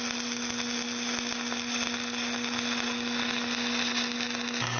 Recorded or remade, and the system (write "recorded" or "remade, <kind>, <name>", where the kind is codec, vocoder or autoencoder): recorded